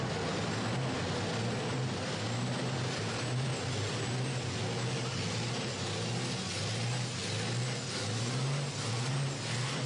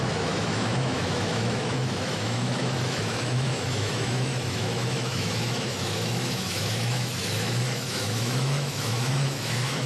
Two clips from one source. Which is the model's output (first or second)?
second